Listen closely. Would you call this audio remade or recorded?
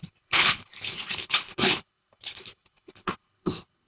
remade